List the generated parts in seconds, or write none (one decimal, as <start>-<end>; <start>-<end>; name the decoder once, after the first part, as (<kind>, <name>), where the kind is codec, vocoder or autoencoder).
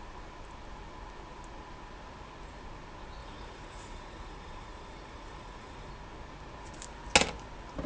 3.2-5.9 (vocoder, Vocos)